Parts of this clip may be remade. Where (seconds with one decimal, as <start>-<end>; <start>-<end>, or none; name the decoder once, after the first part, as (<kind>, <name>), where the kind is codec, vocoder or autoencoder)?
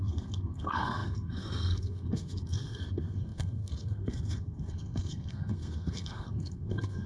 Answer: 0.0-7.1 (codec, SNAC)